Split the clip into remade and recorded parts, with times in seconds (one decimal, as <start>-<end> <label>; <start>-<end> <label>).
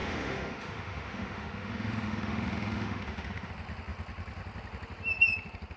0.0-3.5 remade; 3.5-5.8 recorded